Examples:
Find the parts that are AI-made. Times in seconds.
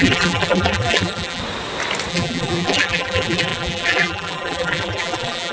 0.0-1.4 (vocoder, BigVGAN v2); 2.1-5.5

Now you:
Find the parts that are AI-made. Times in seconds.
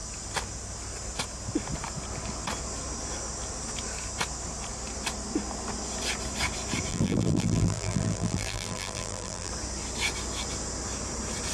6.9-9.5 (vocoder, BigVGAN v2)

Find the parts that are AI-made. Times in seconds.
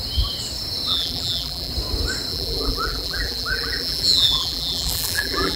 0.9-1.7 (vocoder, BigVGAN v2); 2.3-5.6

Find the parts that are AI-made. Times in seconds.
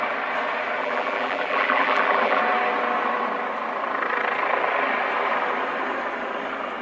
0.8-2.4 (vocoder, BigVGAN v2)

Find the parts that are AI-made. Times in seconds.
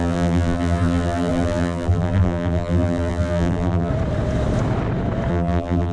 0.0-3.9 (vocoder, BigVGAN v2); 5.3-5.9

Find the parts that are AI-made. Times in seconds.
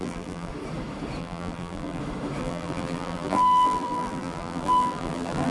0.0-0.5 (vocoder, BigVGAN v2); 1.2-2.0; 2.4-5.5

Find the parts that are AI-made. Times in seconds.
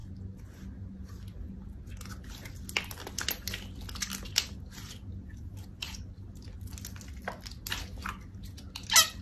none